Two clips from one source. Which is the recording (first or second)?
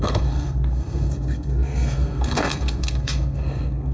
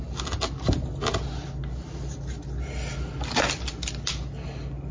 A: second